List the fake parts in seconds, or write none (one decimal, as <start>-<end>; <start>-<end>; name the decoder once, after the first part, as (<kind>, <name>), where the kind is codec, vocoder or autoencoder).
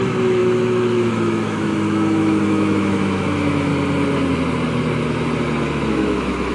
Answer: 0.0-3.7 (autoencoder, DAC-VAE); 5.9-6.5